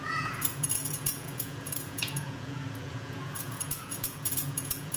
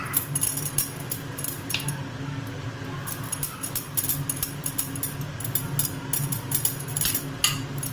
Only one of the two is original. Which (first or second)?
second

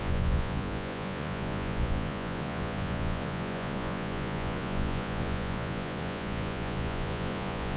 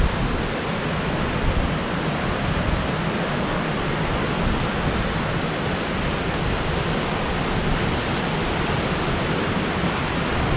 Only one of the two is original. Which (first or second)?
second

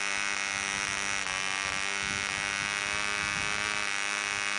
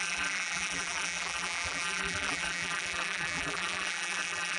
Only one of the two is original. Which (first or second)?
first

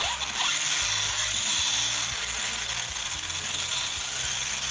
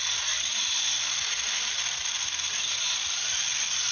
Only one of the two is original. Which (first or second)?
first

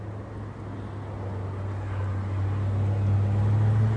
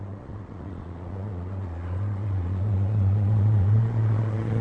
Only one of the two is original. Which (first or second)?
first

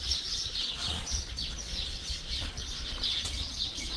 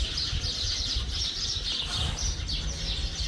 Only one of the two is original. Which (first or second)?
second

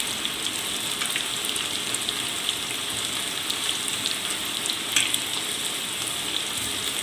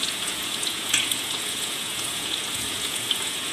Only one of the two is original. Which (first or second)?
first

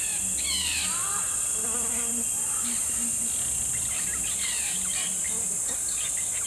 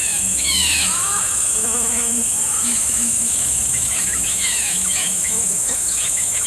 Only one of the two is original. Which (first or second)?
first